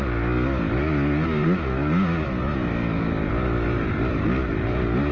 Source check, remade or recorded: recorded